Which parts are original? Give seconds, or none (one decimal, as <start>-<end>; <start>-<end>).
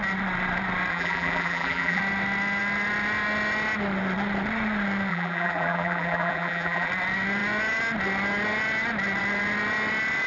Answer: 0.0-0.9; 2.0-5.1; 6.9-10.3